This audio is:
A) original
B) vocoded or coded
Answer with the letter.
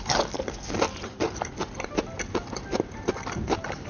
A